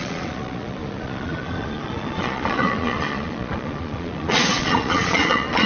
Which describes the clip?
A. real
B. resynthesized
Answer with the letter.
B